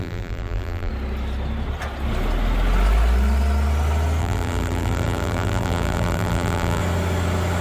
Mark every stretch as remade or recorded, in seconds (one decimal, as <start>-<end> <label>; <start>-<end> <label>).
0.0-0.9 remade; 0.9-4.2 recorded; 4.2-6.8 remade; 6.8-7.6 recorded